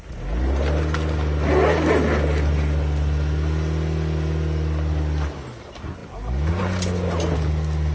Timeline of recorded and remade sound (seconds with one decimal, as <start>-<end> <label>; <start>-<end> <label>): 0.0-7.9 recorded